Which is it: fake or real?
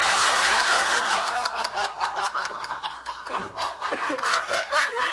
fake